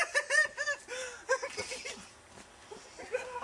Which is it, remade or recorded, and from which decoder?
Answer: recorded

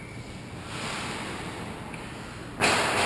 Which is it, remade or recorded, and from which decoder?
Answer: recorded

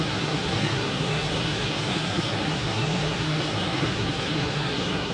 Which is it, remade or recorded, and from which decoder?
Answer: remade, codec, SNAC